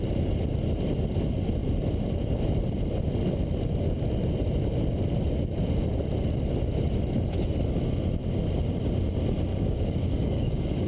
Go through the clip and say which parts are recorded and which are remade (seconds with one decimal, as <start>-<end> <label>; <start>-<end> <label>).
0.0-9.5 recorded; 9.5-10.9 remade